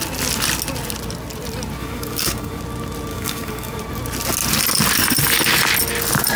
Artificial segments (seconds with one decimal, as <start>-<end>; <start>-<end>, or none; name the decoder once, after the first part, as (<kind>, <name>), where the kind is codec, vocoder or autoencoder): 1.8-2.6 (codec, DAC); 3.1-3.8